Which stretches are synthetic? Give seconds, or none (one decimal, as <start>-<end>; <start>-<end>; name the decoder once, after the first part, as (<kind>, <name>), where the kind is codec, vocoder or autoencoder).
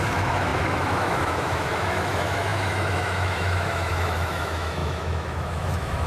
0.0-6.1 (autoencoder, DAC-VAE)